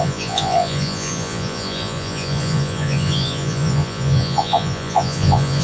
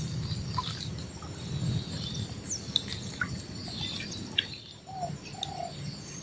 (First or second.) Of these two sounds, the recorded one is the second